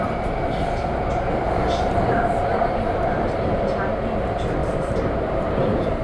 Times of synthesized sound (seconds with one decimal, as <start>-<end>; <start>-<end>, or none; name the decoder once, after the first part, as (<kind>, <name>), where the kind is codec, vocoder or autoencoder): 4.6-6.0 (vocoder, BigVGAN v2)